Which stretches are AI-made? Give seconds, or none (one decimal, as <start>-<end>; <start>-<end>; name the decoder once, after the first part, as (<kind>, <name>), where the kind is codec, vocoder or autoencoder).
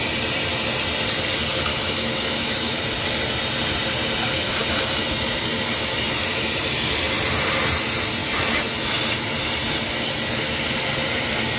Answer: 1.7-2.8 (autoencoder, DAC-VAE)